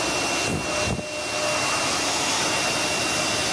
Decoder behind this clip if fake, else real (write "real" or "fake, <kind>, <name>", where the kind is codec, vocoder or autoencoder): real